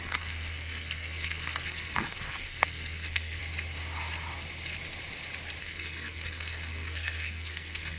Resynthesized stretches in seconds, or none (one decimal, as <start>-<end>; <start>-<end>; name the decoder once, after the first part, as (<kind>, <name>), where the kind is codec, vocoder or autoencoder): 0.0-3.4 (codec, SNAC); 5.6-8.0